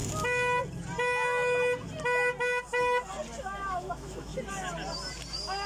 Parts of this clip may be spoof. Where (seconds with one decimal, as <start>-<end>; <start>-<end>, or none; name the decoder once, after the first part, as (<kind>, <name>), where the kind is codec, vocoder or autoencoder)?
3.4-4.3 (autoencoder, DAC-VAE)